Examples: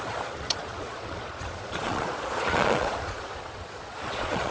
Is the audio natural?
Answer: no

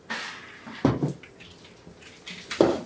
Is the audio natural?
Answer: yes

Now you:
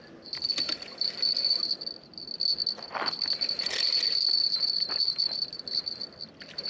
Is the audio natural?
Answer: yes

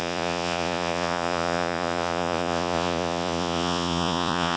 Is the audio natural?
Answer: no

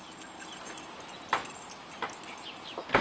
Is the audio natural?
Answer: yes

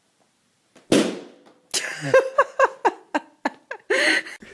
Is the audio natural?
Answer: yes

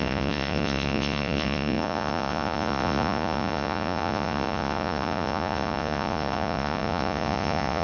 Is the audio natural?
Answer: no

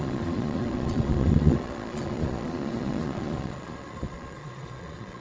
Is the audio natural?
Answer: no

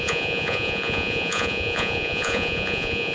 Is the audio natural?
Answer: no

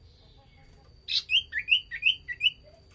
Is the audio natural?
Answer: yes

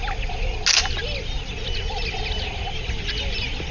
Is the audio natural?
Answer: yes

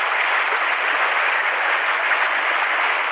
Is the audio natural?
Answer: no